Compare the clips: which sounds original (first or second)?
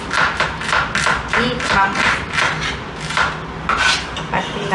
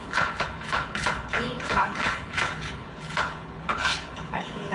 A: first